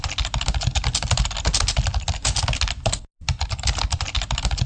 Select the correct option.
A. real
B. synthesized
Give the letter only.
A